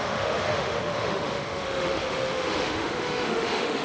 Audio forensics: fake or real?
fake